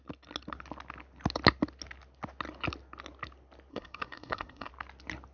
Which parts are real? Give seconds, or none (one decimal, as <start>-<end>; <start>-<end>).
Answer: 0.0-3.7; 4.7-5.3

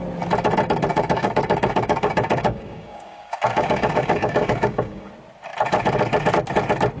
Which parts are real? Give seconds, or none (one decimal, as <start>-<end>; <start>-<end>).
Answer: 0.0-0.9; 5.1-7.0

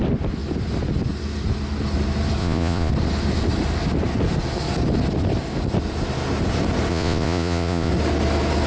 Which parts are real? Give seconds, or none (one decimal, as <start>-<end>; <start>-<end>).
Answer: 0.0-2.4; 2.9-6.9; 7.9-8.7

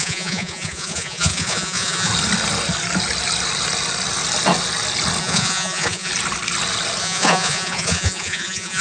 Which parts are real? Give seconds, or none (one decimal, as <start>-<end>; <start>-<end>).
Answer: 2.1-5.2; 6.1-7.0